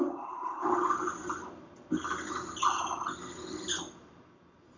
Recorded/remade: recorded